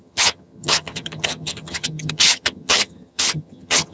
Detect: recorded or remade remade